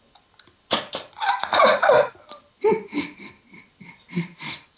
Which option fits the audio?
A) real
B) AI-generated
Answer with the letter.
A